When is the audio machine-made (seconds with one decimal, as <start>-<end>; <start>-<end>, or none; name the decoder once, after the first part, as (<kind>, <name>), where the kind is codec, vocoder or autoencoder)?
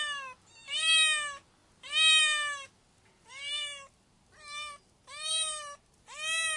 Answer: none